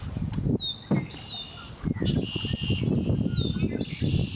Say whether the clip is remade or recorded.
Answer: recorded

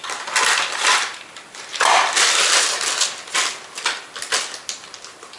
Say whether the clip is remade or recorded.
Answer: recorded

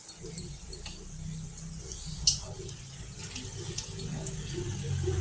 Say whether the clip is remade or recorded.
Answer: recorded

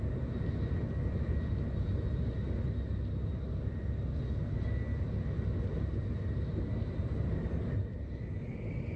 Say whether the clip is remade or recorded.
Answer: recorded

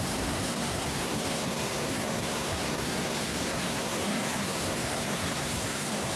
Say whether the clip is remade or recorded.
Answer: remade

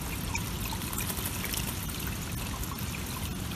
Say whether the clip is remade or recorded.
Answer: recorded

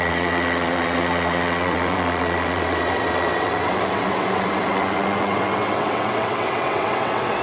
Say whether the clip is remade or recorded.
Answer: remade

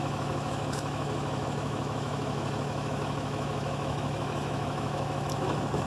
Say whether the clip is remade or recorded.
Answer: remade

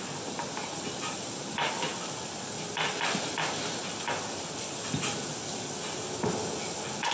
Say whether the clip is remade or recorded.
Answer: recorded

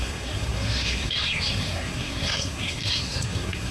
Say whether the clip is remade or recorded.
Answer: remade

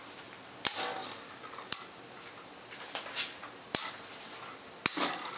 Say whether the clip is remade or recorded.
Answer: recorded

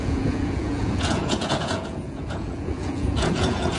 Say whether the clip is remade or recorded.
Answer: remade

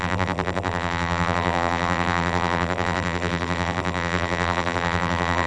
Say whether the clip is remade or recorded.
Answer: remade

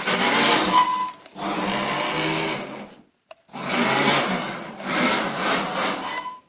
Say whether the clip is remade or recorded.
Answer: recorded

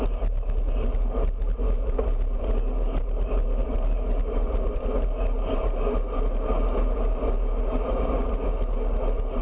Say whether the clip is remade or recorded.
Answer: recorded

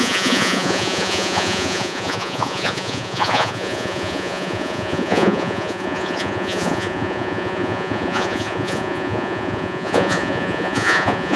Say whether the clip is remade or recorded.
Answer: remade